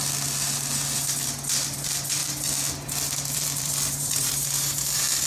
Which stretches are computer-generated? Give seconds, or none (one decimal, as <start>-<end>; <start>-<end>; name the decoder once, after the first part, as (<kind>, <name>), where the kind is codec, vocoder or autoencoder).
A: 2.2-4.3 (vocoder, BigVGAN v2)